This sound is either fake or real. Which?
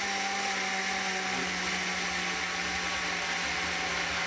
real